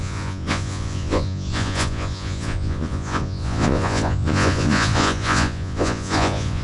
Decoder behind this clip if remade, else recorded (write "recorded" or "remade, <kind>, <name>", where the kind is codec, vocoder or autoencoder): remade, vocoder, Vocos